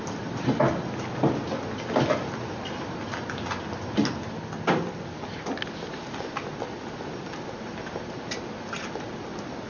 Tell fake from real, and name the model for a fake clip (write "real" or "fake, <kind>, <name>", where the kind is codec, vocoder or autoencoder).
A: real